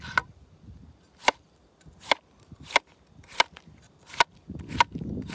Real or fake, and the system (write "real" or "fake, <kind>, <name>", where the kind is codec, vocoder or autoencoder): real